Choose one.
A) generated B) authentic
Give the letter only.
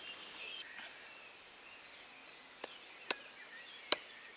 B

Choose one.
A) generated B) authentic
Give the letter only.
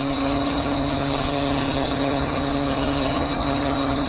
A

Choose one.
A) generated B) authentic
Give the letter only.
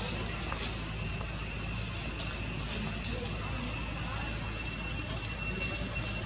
B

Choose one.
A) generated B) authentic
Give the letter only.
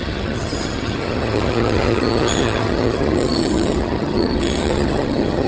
A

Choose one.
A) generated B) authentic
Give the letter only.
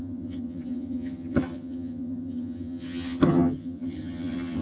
A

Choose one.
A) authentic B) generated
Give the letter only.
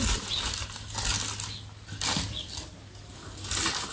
A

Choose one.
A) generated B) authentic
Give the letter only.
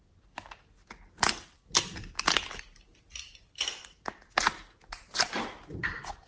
B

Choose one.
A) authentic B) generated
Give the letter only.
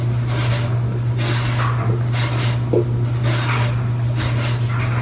A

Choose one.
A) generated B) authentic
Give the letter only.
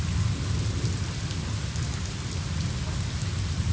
B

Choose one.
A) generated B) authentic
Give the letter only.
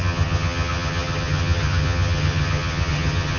A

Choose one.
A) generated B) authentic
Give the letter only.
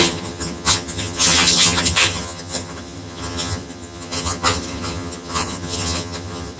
A